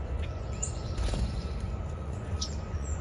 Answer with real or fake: fake